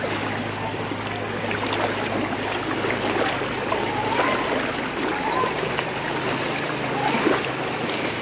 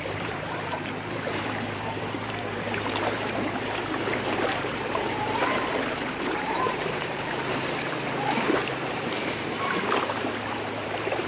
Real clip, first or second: first